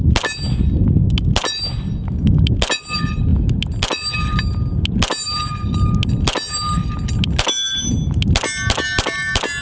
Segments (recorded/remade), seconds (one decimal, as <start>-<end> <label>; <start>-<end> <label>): 0.0-9.6 recorded